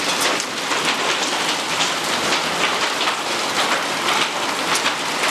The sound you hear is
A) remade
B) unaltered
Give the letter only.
B